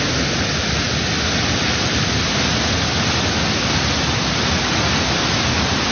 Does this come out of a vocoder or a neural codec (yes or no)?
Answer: no